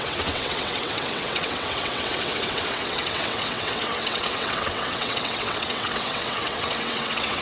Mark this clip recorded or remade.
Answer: remade